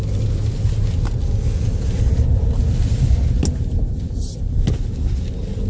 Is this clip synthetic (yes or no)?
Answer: no